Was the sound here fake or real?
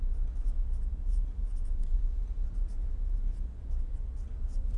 real